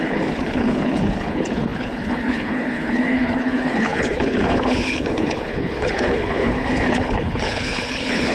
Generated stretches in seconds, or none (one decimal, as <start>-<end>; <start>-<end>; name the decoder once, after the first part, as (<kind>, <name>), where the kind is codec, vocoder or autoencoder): 0.0-8.3 (codec, HILCodec)